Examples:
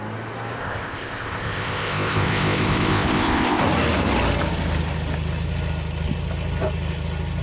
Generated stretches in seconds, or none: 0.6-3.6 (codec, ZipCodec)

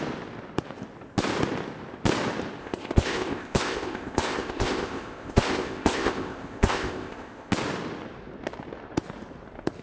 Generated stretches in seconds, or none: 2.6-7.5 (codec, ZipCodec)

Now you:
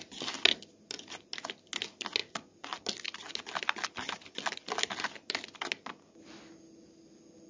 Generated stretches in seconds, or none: none

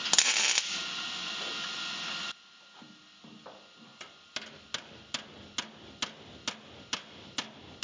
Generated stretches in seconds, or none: none

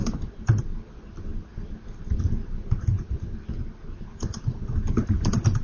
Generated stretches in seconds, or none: none